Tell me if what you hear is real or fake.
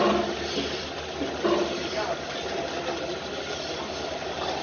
real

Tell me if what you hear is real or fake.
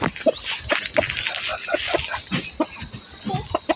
real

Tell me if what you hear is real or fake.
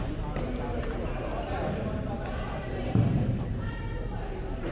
fake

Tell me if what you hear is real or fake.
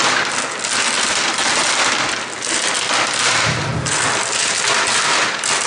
fake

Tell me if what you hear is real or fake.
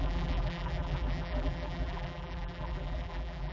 fake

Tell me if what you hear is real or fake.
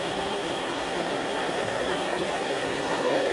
fake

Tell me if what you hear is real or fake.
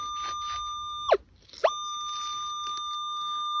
real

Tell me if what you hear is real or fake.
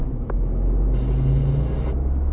real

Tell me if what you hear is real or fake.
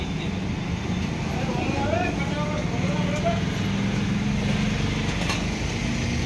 real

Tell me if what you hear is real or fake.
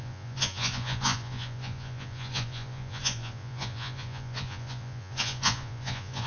fake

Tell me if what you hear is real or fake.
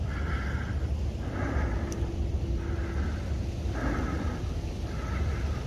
real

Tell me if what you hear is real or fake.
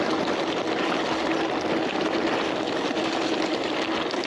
real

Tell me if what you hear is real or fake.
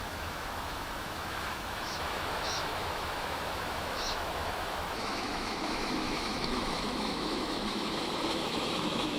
fake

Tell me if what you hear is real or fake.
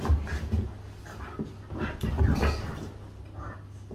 real